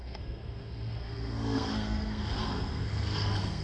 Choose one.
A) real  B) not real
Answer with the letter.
B